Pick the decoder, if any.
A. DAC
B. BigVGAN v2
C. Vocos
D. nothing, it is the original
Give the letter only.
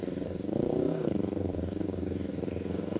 A